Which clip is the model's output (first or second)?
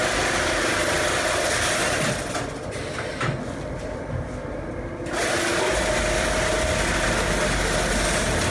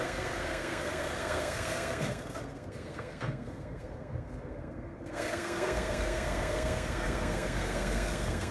second